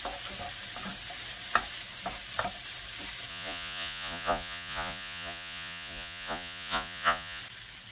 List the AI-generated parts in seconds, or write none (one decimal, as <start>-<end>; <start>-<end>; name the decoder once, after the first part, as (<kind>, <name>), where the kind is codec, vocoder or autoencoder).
3.3-7.4 (vocoder, Vocos)